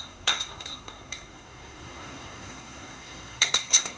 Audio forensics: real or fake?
fake